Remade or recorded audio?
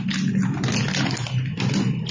recorded